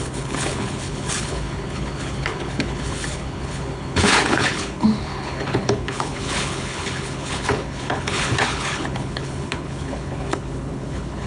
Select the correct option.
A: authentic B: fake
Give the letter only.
B